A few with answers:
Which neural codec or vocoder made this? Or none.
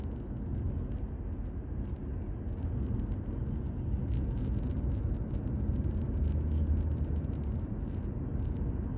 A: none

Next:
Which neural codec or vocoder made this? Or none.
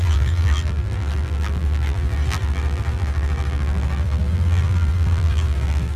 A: vocoder, BigVGAN v2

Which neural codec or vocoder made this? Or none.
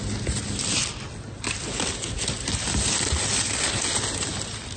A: none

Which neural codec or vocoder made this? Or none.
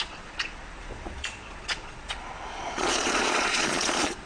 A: vocoder, Vocos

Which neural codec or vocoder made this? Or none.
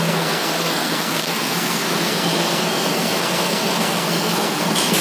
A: codec, SNAC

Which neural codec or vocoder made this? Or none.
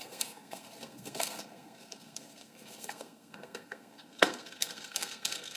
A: codec, SNAC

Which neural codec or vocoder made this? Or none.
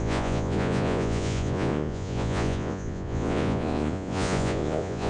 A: vocoder, Vocos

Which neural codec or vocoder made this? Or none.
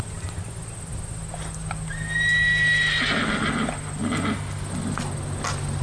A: none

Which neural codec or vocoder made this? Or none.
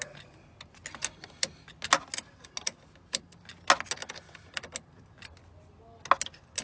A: none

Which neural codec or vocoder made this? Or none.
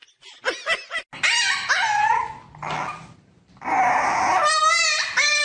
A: none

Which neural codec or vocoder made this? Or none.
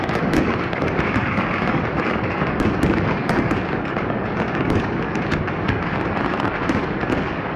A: codec, DAC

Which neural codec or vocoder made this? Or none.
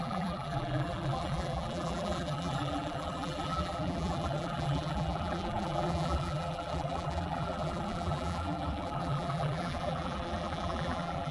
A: vocoder, BigVGAN v2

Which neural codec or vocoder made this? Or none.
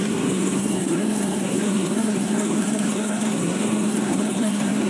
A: codec, SNAC